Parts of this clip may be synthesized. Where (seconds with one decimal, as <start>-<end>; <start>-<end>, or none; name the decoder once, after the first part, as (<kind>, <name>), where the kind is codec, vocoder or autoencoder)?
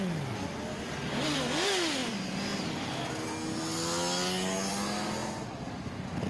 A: none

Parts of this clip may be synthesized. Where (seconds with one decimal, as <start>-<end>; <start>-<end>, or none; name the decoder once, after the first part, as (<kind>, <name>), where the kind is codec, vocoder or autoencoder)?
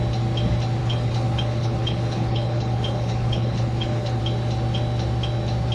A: 0.8-4.2 (codec, HILCodec)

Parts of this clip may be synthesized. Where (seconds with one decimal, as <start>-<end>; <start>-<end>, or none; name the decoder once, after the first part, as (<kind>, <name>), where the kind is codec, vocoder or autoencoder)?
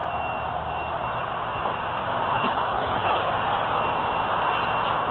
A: 2.3-3.3 (codec, HILCodec)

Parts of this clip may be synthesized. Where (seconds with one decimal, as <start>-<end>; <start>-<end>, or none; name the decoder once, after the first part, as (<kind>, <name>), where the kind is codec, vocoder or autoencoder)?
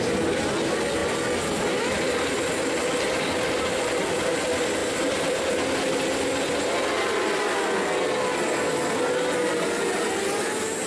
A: none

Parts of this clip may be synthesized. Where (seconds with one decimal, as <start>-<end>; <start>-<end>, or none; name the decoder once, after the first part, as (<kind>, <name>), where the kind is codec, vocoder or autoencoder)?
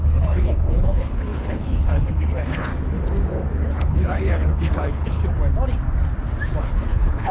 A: 0.0-2.7 (codec, HILCodec); 3.7-5.2; 6.6-7.3